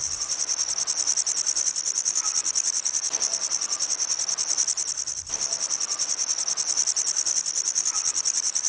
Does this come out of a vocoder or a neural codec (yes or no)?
no